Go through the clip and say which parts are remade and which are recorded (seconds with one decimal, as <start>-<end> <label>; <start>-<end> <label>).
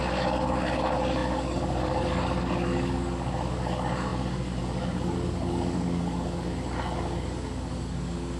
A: 0.0-8.4 remade